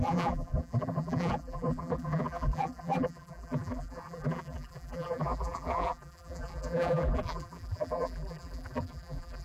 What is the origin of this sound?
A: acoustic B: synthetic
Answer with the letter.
B